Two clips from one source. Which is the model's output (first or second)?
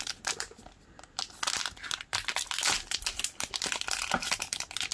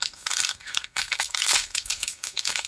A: second